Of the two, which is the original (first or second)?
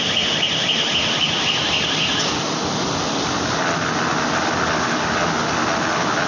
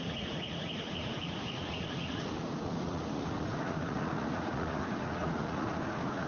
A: first